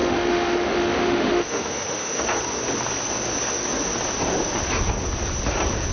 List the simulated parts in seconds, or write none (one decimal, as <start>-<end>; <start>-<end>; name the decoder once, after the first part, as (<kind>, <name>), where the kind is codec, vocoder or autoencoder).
0.0-2.2 (autoencoder, DAC-VAE)